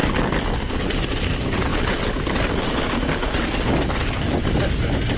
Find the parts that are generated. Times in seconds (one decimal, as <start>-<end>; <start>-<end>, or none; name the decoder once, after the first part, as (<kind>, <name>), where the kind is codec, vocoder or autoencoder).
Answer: 0.7-1.7 (vocoder, BigVGAN v2); 4.2-5.2